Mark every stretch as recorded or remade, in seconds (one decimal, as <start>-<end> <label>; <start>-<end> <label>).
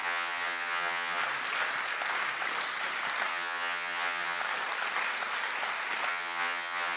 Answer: 0.0-1.2 remade; 1.2-3.3 recorded; 3.3-4.4 remade; 4.4-6.1 recorded; 6.1-7.0 remade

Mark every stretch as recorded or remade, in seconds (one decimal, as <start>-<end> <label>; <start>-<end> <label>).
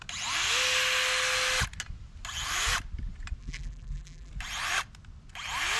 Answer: 0.0-3.4 recorded; 3.4-4.3 remade; 4.3-5.8 recorded